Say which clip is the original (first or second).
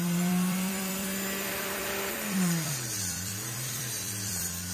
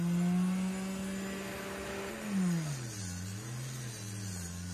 second